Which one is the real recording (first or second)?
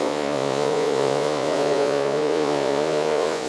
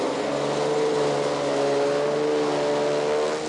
second